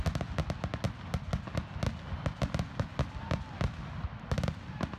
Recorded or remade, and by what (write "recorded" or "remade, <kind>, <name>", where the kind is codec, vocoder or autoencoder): recorded